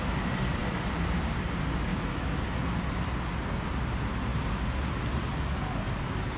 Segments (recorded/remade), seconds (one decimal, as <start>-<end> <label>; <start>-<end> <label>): 0.0-1.9 recorded; 1.9-2.4 remade; 2.4-6.4 recorded